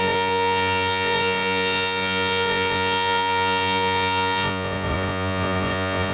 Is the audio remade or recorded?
remade